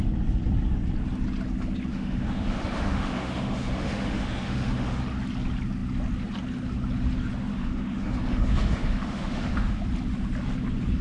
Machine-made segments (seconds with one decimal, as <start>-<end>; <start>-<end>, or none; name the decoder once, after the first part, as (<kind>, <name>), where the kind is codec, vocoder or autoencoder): 1.9-5.0 (autoencoder, DAC-VAE); 7.5-9.8